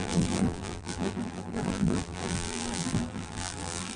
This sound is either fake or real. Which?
fake